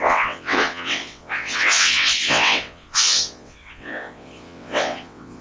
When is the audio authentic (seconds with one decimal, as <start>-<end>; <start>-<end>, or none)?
none